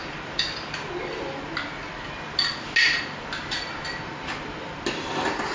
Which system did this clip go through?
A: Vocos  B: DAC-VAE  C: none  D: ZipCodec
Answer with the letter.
C